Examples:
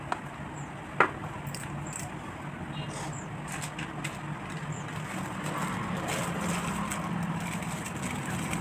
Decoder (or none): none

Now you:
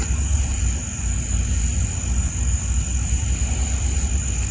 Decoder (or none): none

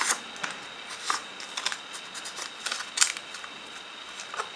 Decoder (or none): none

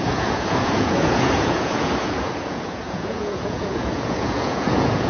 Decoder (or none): vocoder, Vocos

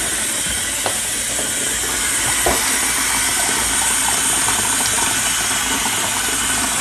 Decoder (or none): none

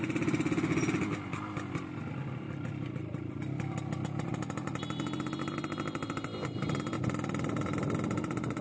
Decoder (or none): none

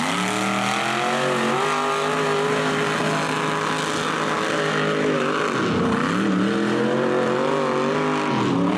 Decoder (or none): none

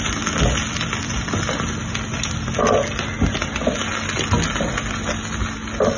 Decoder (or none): none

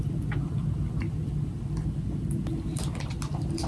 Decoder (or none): none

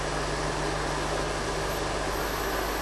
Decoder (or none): none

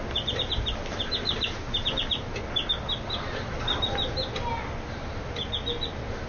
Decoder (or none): none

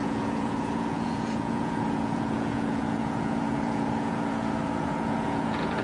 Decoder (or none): vocoder, Vocos